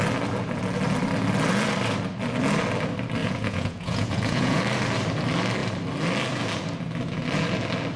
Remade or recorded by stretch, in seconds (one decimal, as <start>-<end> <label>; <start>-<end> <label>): 0.0-3.2 recorded; 3.2-4.6 remade; 4.6-8.0 recorded